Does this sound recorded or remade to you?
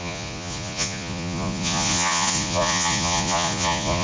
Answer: remade